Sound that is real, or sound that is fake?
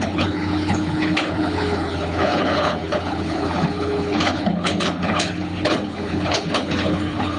fake